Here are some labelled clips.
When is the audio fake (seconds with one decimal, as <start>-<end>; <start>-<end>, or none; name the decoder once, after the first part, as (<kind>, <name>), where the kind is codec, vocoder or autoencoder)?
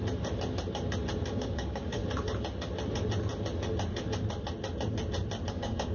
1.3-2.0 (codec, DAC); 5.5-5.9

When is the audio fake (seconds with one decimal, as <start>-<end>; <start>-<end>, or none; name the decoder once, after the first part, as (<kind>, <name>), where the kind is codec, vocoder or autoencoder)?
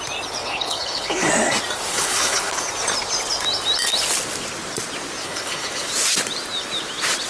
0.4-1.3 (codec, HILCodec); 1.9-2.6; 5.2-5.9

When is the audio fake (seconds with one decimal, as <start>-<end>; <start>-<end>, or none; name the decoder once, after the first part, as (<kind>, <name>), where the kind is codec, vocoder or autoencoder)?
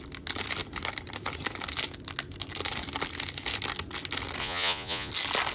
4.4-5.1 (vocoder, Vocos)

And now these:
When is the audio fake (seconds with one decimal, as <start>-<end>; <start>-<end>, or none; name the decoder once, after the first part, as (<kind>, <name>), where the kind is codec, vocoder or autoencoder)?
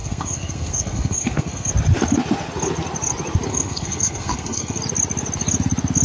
0.0-1.7 (codec, SNAC); 3.5-4.8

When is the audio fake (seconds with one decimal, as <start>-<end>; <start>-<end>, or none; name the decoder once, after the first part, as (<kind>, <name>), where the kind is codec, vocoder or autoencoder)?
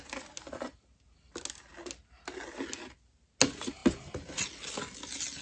none